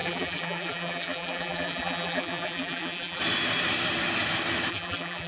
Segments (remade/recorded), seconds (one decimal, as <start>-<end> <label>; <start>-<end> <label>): 0.0-3.2 remade; 3.2-4.7 recorded; 4.7-5.3 remade